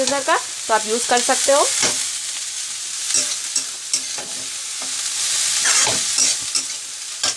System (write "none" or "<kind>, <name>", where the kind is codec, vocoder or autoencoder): none